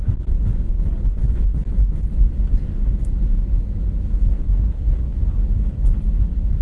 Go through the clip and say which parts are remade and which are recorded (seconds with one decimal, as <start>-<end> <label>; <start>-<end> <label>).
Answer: 0.0-4.1 recorded; 4.1-5.2 remade; 5.2-6.6 recorded